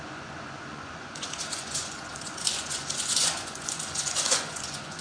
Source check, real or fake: fake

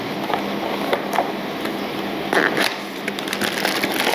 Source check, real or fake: real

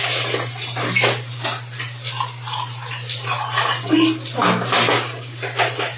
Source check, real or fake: real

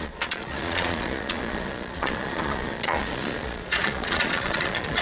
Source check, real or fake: fake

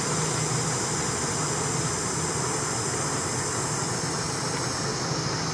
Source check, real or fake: real